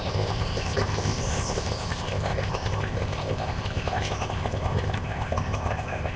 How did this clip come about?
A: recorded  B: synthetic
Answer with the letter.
B